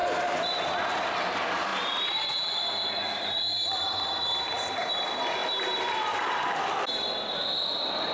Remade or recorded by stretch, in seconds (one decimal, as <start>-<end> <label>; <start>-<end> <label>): 0.0-0.7 remade; 0.7-5.4 recorded; 5.4-7.1 remade; 7.1-8.1 recorded